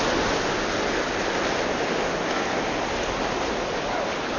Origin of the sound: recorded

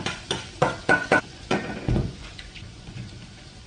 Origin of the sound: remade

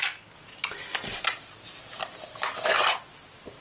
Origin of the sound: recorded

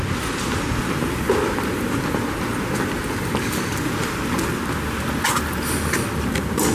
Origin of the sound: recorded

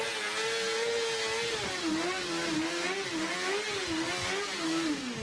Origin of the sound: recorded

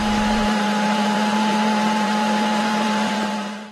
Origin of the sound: remade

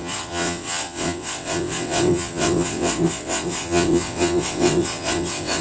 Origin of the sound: remade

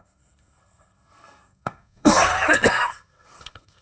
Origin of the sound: remade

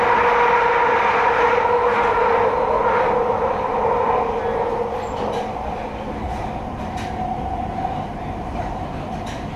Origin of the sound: recorded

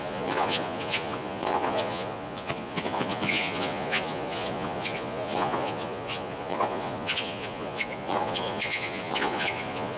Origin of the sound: remade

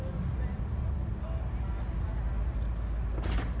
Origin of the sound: recorded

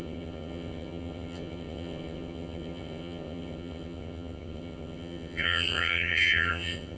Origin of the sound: remade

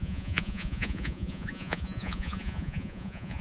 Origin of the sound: remade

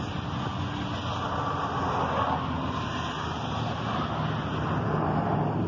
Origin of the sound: recorded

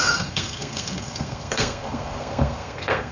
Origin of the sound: remade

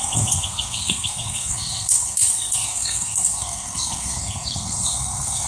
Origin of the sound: remade